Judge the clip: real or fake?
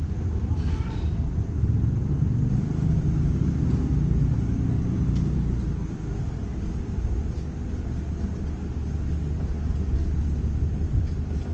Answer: real